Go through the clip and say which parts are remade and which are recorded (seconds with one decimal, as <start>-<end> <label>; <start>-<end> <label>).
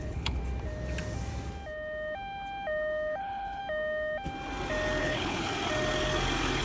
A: 0.0-0.4 remade; 0.4-3.2 recorded; 3.2-3.6 remade; 3.6-5.0 recorded; 5.0-5.5 remade; 5.5-6.6 recorded